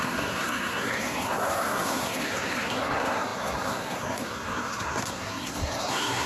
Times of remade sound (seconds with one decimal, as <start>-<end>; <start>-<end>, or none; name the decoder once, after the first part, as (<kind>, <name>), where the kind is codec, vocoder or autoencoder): 0.0-6.3 (codec, SNAC)